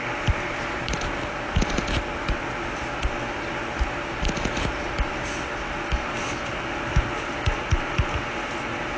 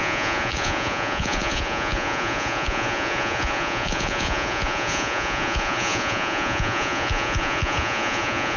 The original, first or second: first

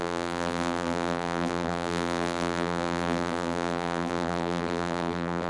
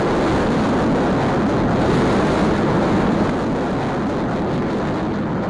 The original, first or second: second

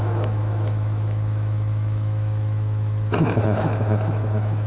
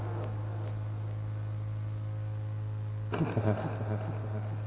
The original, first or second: second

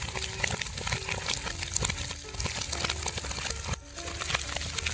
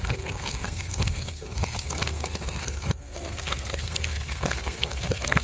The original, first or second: first